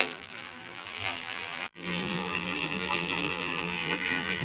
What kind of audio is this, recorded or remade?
remade